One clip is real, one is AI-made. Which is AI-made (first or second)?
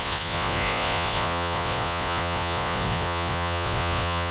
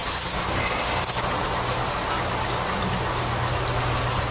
first